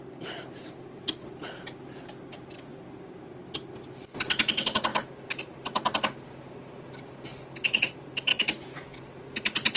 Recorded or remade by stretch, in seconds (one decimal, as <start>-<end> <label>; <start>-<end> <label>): 0.0-8.3 recorded; 8.3-9.0 remade; 9.0-9.8 recorded